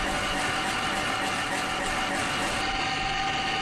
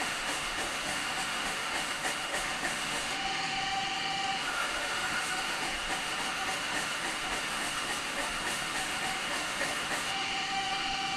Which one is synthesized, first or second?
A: second